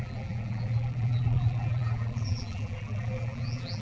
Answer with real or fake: fake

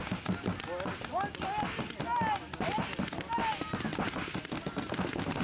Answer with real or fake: real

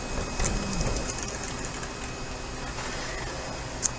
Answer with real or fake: real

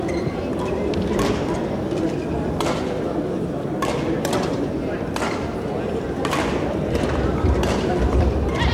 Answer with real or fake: real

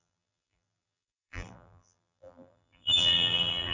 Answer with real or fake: fake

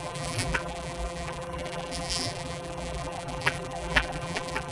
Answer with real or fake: fake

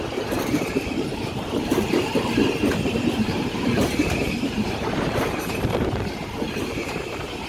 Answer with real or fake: fake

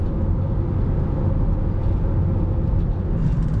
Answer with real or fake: real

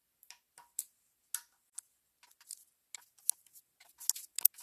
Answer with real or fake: real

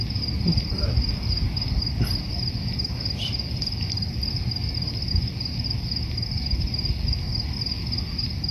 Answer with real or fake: real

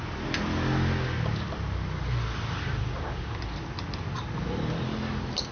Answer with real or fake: real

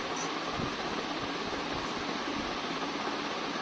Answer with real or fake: real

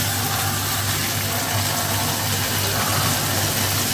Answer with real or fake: real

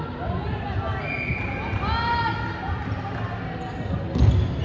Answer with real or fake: real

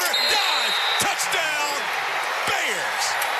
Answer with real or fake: real